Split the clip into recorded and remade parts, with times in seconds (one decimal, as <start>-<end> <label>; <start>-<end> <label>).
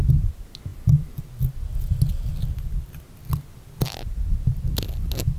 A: 0.0-0.7 recorded; 0.7-1.2 remade; 1.2-5.4 recorded